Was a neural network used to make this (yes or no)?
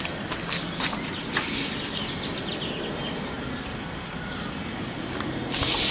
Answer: no